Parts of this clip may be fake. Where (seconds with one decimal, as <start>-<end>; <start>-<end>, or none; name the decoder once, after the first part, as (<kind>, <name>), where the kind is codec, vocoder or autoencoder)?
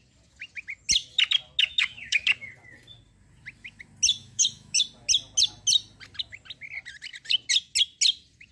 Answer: 1.6-2.5 (autoencoder, DAC-VAE); 4.2-4.8